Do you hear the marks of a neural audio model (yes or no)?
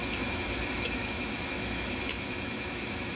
yes